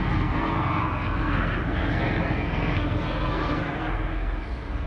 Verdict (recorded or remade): remade